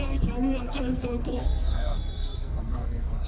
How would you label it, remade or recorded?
remade